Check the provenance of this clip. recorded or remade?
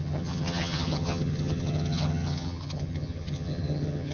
remade